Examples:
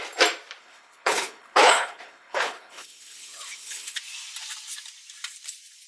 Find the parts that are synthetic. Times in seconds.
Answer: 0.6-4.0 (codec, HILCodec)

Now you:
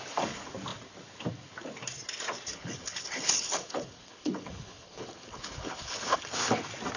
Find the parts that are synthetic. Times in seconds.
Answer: 2.5-6.6 (codec, HILCodec)